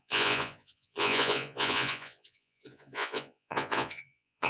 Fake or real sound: fake